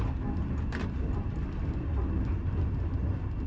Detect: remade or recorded recorded